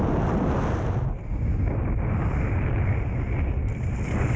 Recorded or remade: recorded